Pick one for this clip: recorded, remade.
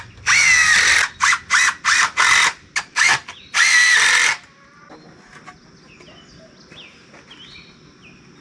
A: recorded